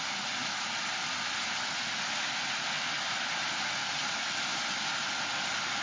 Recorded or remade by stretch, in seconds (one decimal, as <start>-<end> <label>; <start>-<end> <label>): 0.0-5.8 recorded